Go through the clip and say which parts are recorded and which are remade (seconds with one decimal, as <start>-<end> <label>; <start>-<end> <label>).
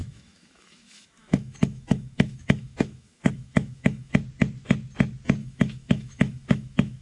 0.0-4.2 remade; 4.2-5.4 recorded; 5.4-7.0 remade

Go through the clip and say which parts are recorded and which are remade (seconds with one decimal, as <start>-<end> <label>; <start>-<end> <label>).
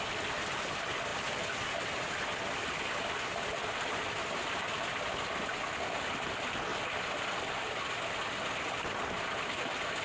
0.0-10.0 recorded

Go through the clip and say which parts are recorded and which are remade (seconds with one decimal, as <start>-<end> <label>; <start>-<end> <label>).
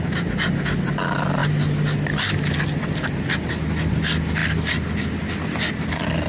0.0-6.3 recorded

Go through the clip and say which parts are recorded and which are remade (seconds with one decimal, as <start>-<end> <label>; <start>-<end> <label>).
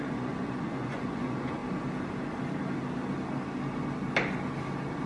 0.0-1.6 remade; 1.6-5.1 recorded